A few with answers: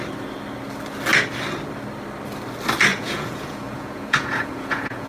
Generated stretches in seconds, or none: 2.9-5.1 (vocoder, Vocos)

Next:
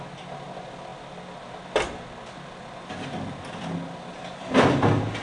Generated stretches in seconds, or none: none

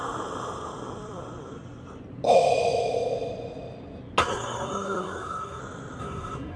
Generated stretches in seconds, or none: 4.2-5.6 (codec, SNAC); 6.0-6.6

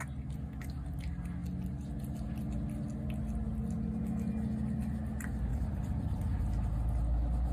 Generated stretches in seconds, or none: 5.5-6.4 (vocoder, BigVGAN v2)

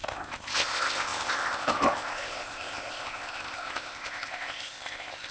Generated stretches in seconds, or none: 0.0-5.3 (codec, ZipCodec)

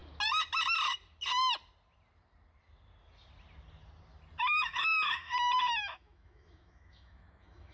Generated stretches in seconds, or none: 4.6-7.7 (autoencoder, DAC-VAE)